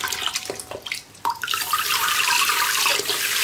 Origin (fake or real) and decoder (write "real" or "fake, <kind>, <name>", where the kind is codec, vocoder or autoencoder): real